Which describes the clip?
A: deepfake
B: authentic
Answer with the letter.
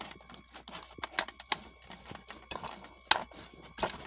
B